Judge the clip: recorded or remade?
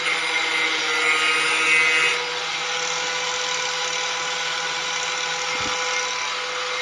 recorded